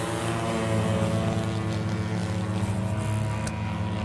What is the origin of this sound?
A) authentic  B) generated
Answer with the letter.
A